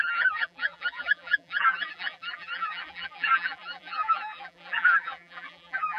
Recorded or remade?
remade